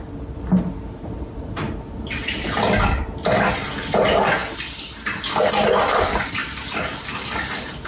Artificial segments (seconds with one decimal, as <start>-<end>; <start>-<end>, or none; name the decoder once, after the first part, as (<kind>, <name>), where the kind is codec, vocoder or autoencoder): none

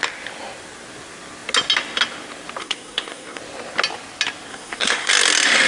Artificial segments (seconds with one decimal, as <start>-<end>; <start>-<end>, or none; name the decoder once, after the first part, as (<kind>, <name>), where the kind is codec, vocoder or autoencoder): 2.6-3.4 (codec, SNAC); 4.5-5.1

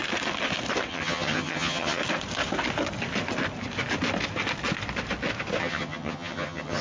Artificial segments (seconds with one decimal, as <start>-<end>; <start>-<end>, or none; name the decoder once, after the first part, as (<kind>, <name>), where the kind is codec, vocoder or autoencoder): 0.9-2.0 (vocoder, HiFi-GAN); 5.6-6.8